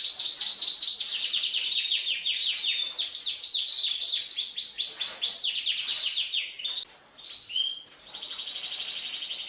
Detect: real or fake real